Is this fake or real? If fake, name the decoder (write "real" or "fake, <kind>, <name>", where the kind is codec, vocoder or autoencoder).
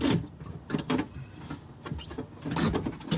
real